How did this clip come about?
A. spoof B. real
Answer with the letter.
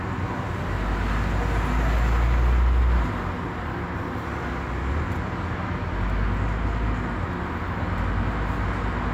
B